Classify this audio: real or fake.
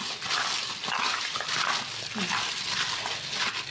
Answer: real